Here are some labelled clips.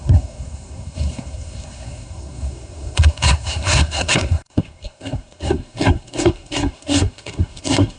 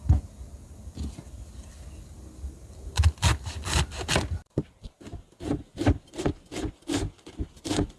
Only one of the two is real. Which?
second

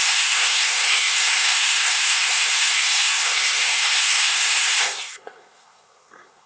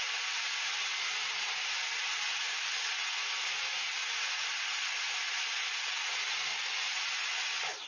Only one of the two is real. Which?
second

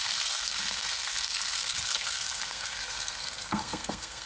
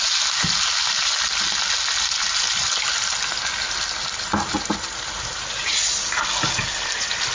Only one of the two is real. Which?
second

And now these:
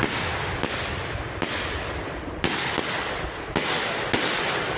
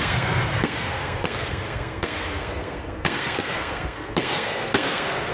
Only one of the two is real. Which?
first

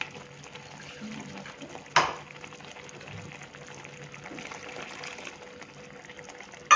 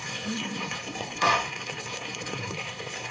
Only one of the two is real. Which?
first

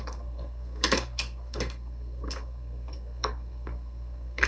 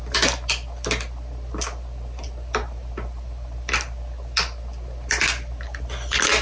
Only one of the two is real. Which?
second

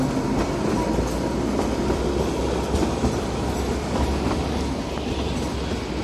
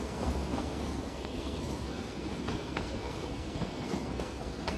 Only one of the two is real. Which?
first